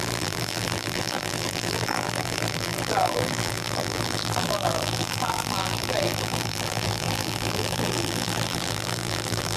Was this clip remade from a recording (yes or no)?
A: yes